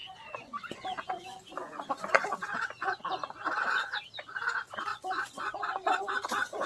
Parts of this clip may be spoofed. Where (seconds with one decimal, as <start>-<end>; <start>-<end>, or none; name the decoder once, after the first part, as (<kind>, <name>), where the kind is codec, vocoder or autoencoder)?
0.0-4.0 (vocoder, Vocos); 4.9-6.0